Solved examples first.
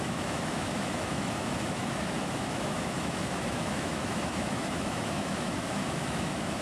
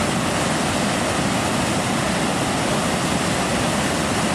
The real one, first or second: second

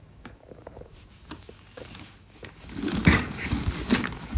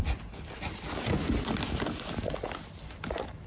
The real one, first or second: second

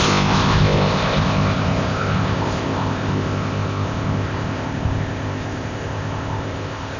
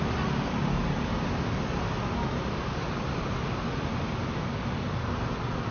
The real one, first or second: second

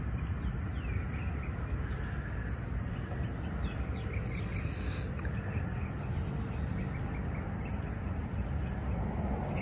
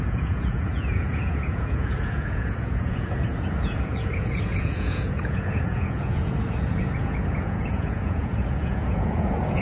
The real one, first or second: first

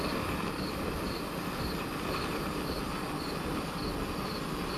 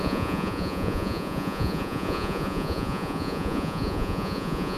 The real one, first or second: first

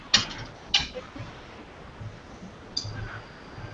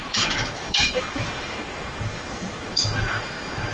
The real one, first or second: first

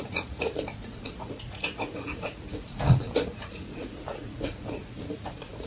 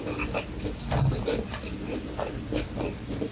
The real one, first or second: second